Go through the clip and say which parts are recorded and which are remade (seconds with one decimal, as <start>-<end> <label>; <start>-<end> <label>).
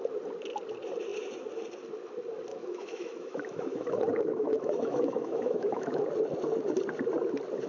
0.0-2.5 recorded; 2.5-6.0 remade; 6.0-7.7 recorded